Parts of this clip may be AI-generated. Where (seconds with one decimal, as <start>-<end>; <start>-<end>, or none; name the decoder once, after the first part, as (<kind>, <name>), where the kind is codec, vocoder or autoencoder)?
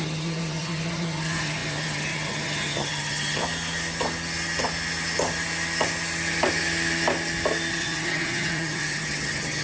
0.0-3.4 (vocoder, HiFi-GAN); 7.7-9.6